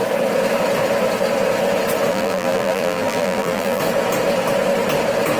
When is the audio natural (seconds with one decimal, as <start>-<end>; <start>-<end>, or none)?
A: 0.0-2.1; 3.8-5.4